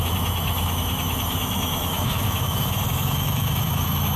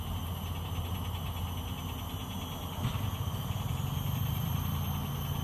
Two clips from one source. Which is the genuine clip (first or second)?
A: second